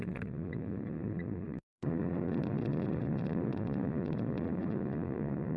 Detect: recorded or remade remade